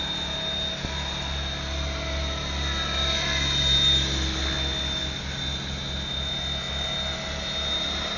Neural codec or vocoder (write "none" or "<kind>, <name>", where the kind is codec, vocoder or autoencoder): none